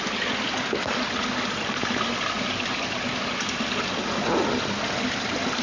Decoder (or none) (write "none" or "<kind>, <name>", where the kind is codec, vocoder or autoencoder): none